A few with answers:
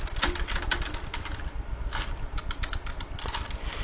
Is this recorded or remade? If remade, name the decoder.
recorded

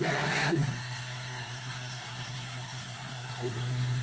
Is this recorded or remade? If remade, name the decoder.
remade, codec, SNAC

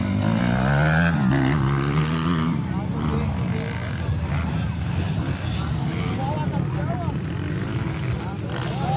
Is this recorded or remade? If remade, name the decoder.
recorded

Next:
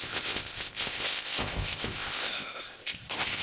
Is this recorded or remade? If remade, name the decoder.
remade, codec, ZipCodec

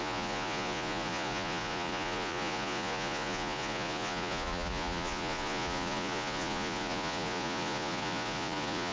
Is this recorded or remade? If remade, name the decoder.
remade, vocoder, Vocos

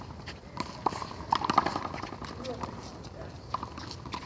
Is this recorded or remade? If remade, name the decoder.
recorded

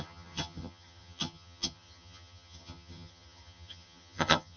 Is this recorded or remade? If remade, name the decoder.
remade, vocoder, HiFi-GAN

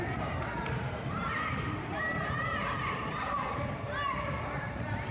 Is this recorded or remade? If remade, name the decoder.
remade, vocoder, BigVGAN v2